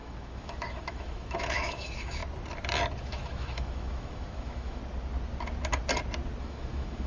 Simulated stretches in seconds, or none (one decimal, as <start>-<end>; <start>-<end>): 0.0-2.2; 3.0-4.8; 6.4-7.1